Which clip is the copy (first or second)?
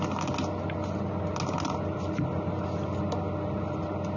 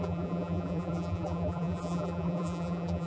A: second